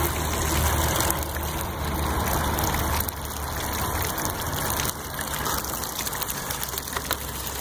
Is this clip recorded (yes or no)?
yes